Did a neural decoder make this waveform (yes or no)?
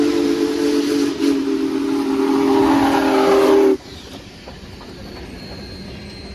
no